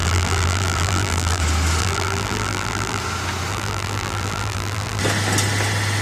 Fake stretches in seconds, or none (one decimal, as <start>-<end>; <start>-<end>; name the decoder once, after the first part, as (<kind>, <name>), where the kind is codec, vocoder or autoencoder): 0.0-1.4 (vocoder, BigVGAN v2); 1.8-3.0; 3.5-5.0